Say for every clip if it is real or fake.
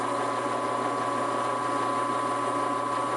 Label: real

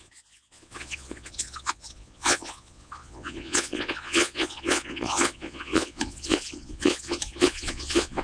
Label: fake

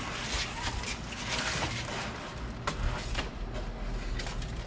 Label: real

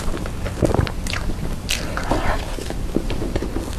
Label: real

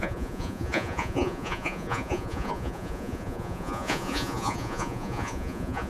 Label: fake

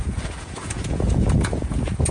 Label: fake